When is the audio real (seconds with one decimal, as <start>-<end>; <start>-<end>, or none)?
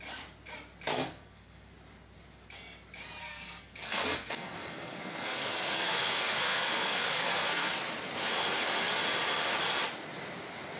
0.0-0.9; 1.7-3.2; 7.7-10.8